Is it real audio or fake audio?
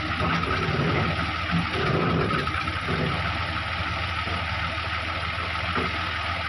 real